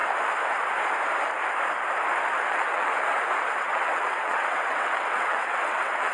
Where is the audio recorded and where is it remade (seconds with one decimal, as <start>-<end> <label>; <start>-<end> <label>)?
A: 0.0-2.5 recorded; 2.5-2.9 remade; 2.9-3.5 recorded; 3.5-6.1 remade